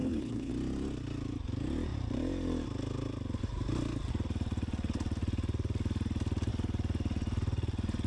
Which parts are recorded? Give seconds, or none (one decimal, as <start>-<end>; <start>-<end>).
0.5-8.1